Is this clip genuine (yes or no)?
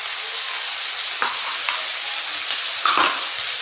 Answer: yes